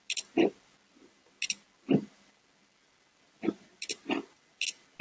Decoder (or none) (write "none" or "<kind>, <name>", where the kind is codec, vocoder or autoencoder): none